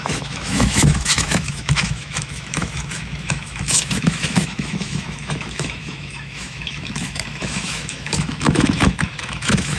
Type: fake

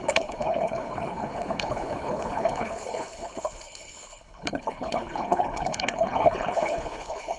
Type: fake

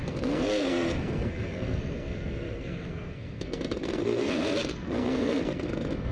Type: fake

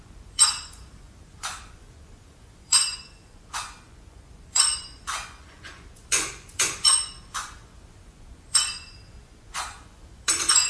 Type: fake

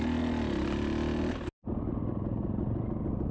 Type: real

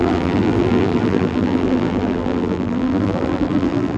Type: fake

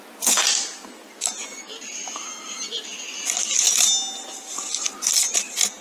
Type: real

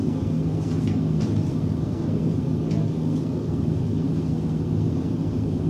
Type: fake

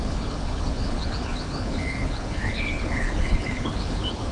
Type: fake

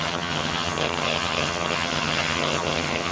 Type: fake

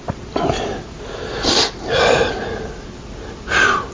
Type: real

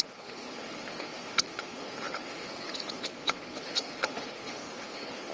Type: fake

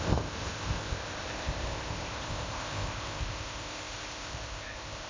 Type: fake